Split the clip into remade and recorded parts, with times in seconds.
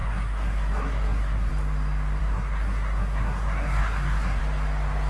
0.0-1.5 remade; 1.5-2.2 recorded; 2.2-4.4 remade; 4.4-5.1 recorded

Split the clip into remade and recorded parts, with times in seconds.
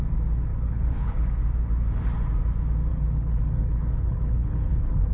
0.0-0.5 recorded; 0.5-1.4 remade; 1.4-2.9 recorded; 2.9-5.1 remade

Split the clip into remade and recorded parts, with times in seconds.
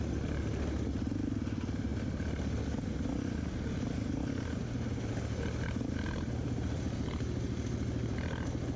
0.0-8.8 recorded